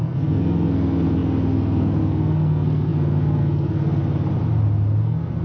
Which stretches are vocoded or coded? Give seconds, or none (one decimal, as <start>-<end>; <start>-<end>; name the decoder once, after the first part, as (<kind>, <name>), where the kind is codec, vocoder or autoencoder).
0.0-4.0 (codec, SNAC); 5.0-5.4